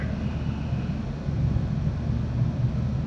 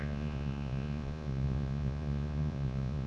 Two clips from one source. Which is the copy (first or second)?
second